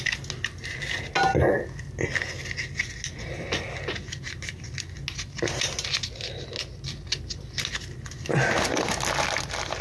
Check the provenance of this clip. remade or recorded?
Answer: recorded